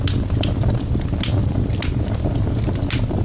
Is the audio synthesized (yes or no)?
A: no